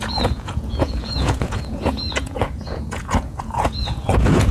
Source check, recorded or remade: remade